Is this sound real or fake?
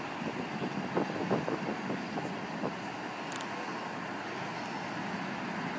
real